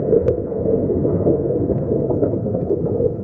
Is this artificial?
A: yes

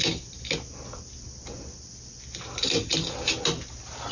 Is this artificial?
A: no